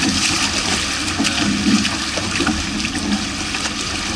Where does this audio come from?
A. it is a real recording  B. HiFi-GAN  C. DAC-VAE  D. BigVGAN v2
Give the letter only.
A